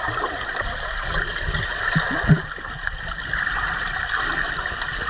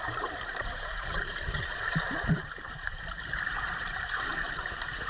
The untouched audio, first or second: first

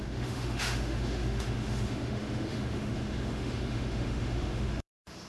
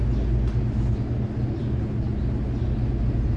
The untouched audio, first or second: second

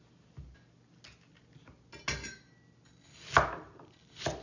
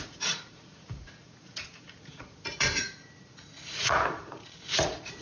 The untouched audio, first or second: first